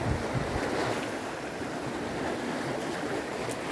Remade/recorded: recorded